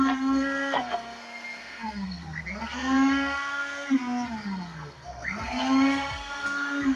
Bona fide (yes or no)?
no